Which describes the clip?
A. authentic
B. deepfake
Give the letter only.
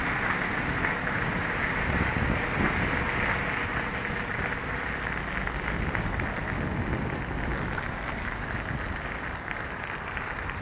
A